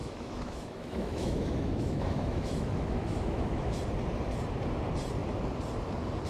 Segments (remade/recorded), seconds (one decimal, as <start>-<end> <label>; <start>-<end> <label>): 0.0-3.8 remade; 3.8-6.3 recorded